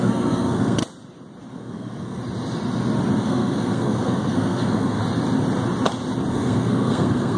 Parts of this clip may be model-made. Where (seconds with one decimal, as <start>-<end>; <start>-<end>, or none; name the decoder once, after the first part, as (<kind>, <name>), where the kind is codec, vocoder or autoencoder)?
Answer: 0.0-0.8 (codec, SNAC); 1.5-2.2; 3.2-5.0; 6.3-7.4